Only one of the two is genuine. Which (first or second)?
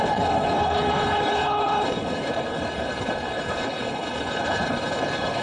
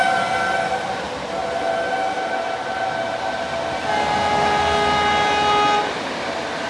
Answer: second